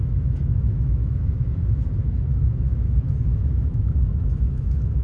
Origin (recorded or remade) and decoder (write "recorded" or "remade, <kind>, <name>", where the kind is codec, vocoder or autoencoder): remade, autoencoder, DAC-VAE